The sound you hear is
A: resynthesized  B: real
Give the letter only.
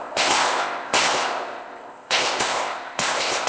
A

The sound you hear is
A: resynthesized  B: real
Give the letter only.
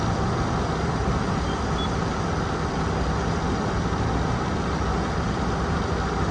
B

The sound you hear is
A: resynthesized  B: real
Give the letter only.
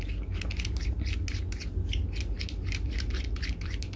B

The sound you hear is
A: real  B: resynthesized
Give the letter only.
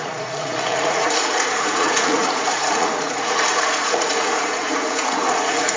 B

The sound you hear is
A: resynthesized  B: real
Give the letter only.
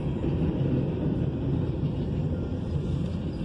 B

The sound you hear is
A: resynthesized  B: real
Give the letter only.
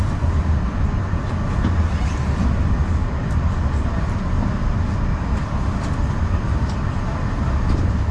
B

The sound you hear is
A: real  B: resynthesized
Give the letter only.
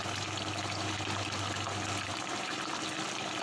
A